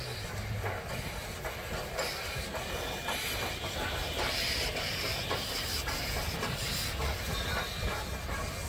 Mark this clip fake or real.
real